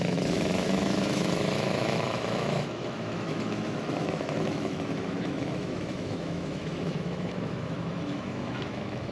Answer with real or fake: fake